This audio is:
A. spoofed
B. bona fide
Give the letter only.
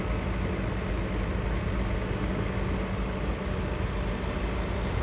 B